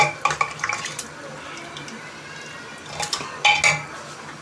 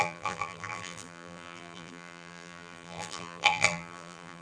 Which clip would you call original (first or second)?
first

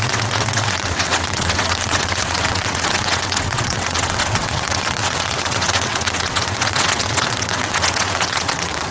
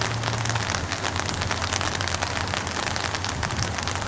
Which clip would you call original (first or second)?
second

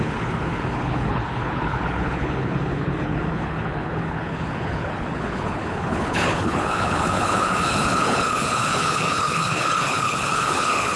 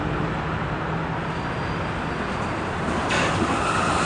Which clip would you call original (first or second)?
second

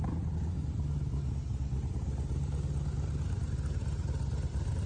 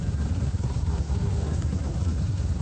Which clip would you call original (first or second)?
first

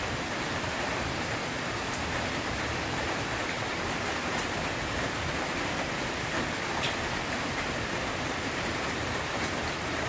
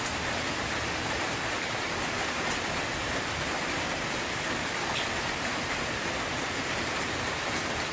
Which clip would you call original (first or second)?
second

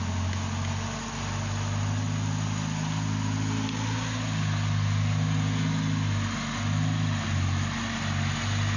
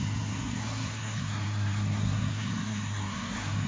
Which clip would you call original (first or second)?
first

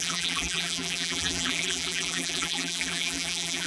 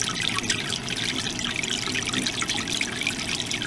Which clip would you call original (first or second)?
second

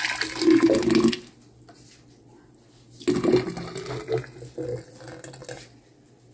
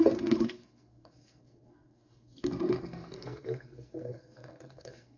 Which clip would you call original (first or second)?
first